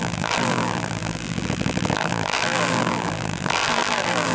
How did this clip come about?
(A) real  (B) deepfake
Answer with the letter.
B